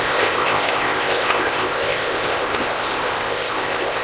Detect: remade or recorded remade